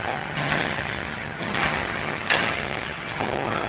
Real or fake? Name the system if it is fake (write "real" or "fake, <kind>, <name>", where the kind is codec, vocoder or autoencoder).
fake, vocoder, HiFi-GAN